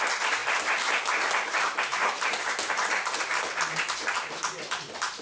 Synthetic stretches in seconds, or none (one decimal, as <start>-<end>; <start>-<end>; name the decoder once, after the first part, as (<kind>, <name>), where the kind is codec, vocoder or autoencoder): 1.9-4.1 (vocoder, BigVGAN v2)